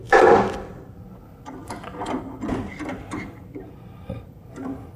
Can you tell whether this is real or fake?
fake